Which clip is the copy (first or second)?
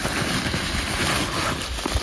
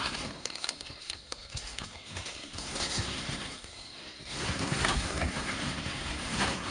second